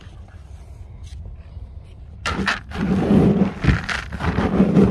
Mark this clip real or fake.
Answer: real